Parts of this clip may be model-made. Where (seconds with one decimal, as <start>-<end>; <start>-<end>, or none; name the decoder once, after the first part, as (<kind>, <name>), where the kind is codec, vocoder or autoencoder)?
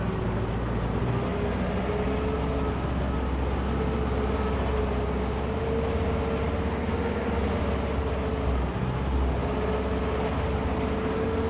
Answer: none